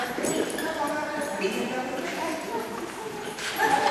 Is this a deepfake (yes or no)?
yes